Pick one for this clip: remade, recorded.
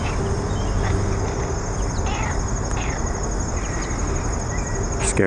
recorded